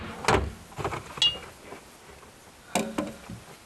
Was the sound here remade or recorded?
recorded